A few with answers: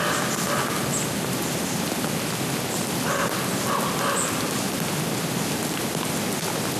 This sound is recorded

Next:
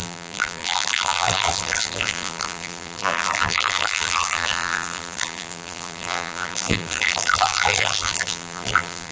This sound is remade